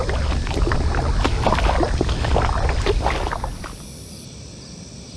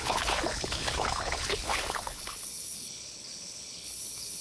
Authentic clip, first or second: first